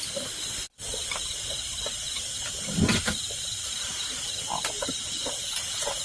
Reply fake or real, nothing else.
real